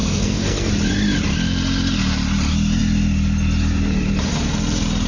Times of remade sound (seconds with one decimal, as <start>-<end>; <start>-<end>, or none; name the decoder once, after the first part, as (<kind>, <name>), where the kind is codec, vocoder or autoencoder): 0.0-0.7 (codec, SNAC)